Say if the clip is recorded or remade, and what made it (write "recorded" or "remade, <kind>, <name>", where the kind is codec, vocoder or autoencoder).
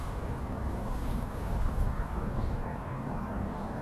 remade, codec, DAC